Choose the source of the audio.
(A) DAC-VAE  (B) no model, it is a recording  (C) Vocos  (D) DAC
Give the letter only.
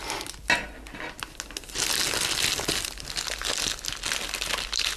B